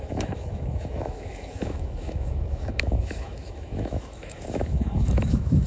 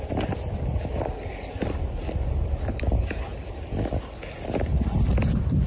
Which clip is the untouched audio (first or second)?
second